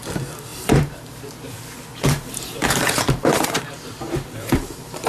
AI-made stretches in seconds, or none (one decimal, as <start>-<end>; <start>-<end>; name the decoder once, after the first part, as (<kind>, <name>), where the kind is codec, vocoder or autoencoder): 0.5-1.2 (vocoder, BigVGAN v2); 1.9-5.1